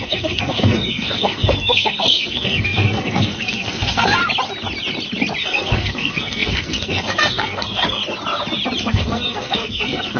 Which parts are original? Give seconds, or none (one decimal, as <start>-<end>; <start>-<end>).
4.2-5.4; 8.0-8.8